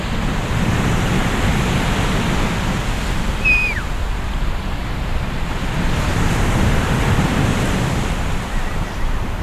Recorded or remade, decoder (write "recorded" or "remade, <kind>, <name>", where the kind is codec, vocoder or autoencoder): remade, vocoder, BigVGAN v2